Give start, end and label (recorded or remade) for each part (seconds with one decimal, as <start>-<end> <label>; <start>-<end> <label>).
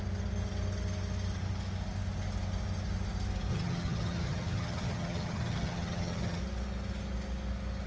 0.0-3.5 recorded; 3.5-6.4 remade; 6.4-7.9 recorded